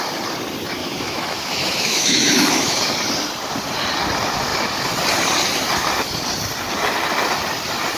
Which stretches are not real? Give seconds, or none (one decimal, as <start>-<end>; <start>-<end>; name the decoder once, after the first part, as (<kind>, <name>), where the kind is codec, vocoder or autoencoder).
0.8-2.9 (autoencoder, DAC-VAE)